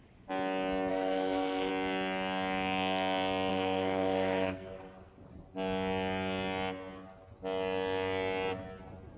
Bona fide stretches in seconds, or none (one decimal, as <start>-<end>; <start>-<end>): 0.0-0.9; 1.7-3.5; 5.3-9.2